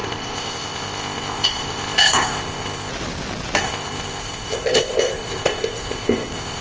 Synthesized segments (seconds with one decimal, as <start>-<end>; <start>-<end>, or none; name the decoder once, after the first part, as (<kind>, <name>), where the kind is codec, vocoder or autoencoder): 0.0-2.9 (codec, ZipCodec); 3.6-6.6